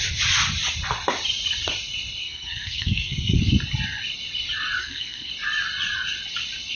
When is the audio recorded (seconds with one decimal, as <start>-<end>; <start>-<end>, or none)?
0.0-2.2; 3.4-4.8; 5.3-6.8